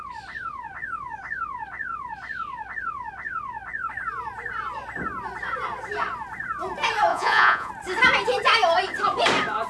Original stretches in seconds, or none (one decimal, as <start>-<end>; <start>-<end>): 0.0-7.1; 7.7-9.7